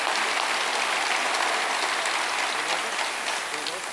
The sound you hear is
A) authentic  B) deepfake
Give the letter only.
A